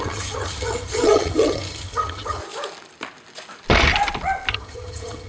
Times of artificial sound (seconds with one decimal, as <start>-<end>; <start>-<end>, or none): 0.0-2.4; 4.5-5.3